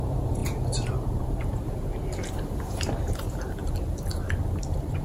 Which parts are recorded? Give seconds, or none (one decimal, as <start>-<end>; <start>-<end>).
3.6-4.6